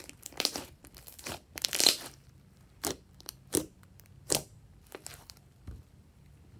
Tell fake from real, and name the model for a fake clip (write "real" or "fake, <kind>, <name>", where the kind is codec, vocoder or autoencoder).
fake, vocoder, BigVGAN v2